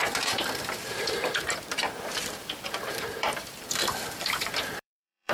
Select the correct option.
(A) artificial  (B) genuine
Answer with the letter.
A